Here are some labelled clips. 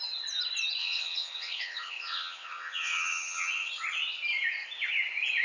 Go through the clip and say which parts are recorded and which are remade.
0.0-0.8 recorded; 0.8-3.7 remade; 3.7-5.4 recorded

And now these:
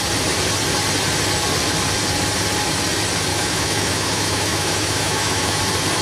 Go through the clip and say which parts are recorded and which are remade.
0.0-3.3 recorded; 3.3-5.6 remade; 5.6-6.0 recorded

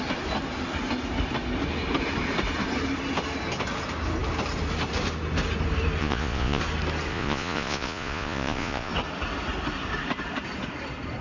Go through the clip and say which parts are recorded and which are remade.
0.0-6.0 recorded; 6.0-6.6 remade; 6.6-7.1 recorded; 7.1-8.9 remade; 8.9-11.2 recorded

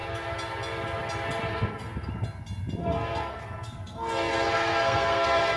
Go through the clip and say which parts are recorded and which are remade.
0.0-1.5 recorded; 1.5-2.1 remade; 2.1-2.8 recorded; 2.8-5.6 remade

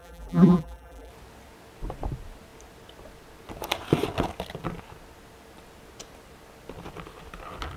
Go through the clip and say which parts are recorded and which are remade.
0.0-1.1 remade; 1.1-7.8 recorded

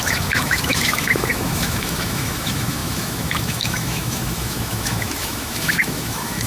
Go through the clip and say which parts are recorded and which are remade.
0.0-6.5 remade

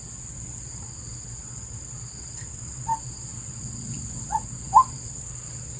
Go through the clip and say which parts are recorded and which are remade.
0.0-5.8 remade